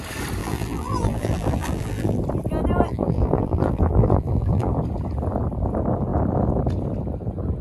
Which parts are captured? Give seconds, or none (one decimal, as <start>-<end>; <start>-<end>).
0.0-0.4; 2.2-2.9; 4.7-7.6

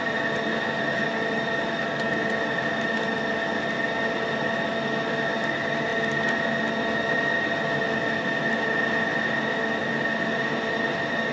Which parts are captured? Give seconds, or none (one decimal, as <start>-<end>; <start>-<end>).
0.0-11.3

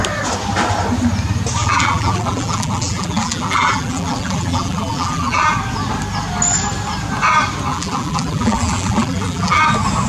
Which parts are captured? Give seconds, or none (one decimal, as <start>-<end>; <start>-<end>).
0.0-1.6; 5.5-7.7; 9.6-10.1

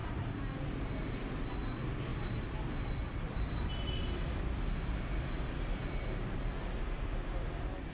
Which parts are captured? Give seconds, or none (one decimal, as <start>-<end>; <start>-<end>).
0.0-2.1; 6.8-7.9

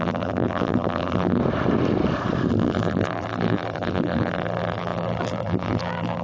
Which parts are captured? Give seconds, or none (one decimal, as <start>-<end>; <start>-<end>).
1.4-2.5

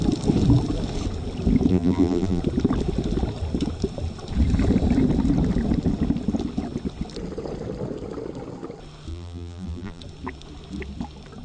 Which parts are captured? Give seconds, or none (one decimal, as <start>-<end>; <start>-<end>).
0.0-1.7; 2.4-9.1; 10.0-11.4

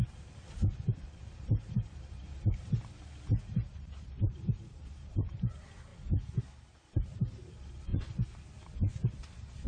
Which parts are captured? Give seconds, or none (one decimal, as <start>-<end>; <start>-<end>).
5.9-6.4; 7.9-8.9

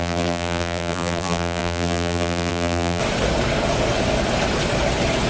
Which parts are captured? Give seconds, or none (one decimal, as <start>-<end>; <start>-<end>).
3.0-5.3